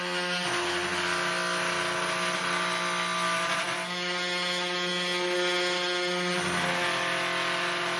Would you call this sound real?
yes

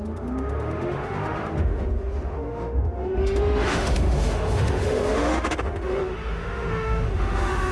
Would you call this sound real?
no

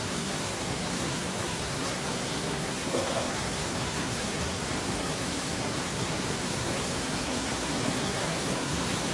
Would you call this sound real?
no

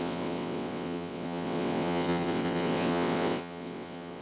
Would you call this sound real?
no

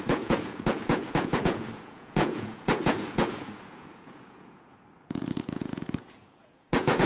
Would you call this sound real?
no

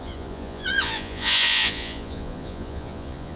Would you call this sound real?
no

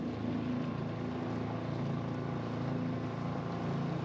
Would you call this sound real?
yes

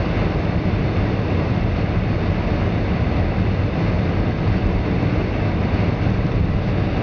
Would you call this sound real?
yes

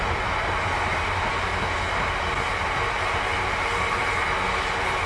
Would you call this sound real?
yes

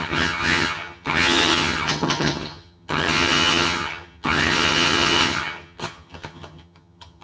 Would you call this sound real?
no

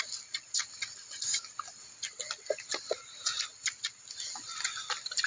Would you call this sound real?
yes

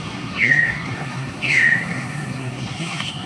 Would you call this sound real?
no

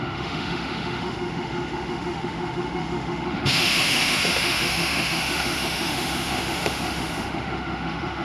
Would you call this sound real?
no